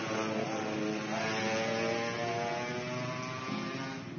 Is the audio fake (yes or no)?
no